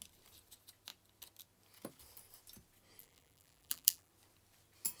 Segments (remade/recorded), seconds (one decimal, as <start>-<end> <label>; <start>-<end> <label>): 0.0-3.0 recorded; 3.0-4.1 remade; 4.1-5.0 recorded

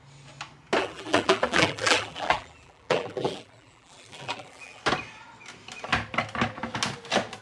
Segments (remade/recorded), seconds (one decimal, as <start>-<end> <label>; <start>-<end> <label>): 0.0-0.8 recorded; 0.8-4.8 remade; 4.8-7.4 recorded